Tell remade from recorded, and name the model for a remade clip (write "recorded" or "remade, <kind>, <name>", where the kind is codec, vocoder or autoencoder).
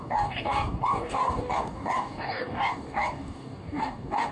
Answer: remade, codec, DAC